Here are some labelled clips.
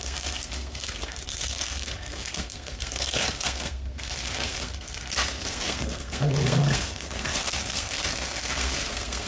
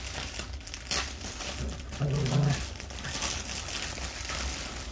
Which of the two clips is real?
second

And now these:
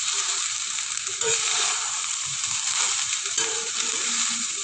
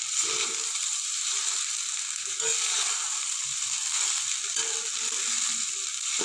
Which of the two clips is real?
second